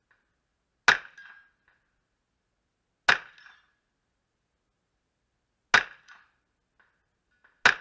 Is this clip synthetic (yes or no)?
no